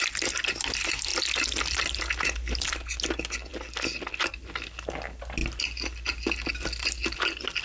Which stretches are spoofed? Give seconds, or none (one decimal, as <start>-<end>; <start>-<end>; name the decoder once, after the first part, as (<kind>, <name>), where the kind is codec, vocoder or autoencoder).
none